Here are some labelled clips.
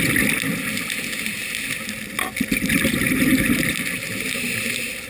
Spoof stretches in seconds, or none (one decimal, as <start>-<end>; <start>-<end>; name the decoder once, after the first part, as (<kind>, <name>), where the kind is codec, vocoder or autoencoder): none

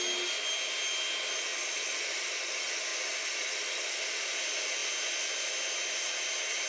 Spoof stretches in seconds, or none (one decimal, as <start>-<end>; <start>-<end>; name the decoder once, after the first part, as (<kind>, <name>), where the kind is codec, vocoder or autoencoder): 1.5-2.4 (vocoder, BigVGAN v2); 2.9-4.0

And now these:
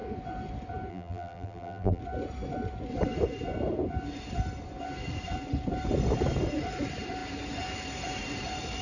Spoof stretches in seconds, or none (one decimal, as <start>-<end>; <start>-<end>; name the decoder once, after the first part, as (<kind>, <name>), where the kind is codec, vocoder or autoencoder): 0.9-2.0 (vocoder, BigVGAN v2)